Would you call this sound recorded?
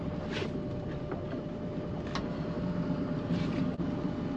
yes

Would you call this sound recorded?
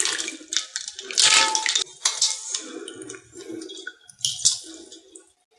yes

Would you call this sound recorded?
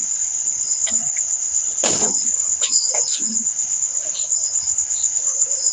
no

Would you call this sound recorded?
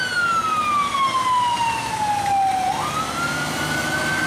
yes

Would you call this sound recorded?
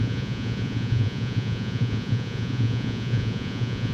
no